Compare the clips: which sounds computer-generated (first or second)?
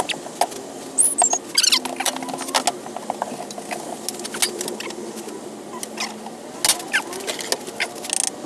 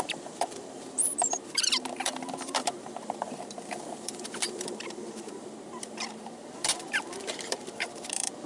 second